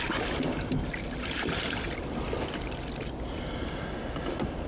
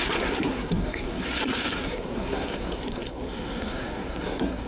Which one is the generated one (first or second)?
second